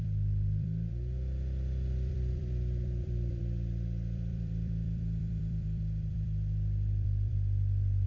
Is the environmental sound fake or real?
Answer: fake